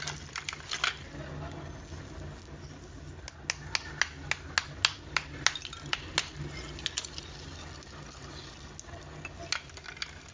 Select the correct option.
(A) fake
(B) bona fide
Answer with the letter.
B